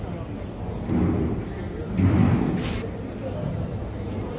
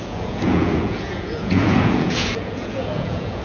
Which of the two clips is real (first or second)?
first